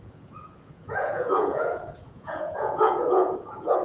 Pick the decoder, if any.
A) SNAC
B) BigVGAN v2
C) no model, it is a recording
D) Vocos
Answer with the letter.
D